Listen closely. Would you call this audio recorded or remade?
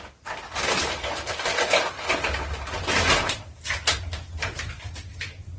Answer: recorded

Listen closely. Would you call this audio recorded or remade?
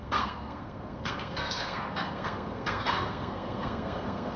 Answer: remade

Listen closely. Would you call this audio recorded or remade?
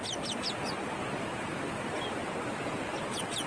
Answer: recorded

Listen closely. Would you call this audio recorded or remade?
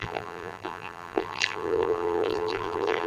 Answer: remade